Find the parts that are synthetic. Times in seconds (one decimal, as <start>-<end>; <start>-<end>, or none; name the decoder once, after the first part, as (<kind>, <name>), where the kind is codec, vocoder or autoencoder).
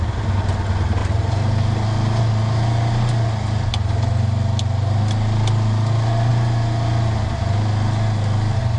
none